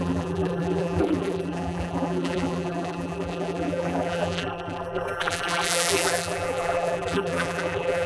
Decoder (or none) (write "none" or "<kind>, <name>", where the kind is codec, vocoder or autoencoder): vocoder, BigVGAN v2